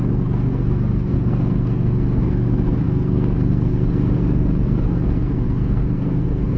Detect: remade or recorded remade